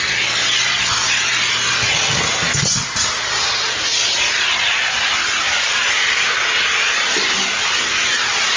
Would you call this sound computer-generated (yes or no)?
no